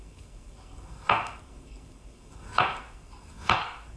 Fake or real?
fake